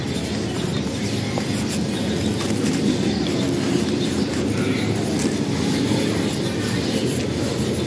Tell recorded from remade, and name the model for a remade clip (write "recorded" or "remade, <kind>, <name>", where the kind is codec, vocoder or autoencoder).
recorded